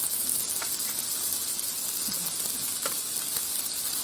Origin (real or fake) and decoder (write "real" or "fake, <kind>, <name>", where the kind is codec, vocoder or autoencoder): real